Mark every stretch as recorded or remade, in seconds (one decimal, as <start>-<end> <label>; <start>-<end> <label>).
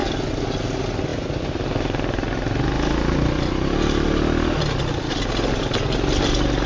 0.0-6.7 recorded